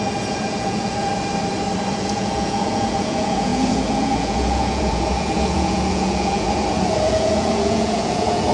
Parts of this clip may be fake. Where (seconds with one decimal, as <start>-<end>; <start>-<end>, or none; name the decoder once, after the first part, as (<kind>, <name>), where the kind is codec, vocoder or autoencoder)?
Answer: 0.0-1.1 (vocoder, Vocos); 2.0-8.5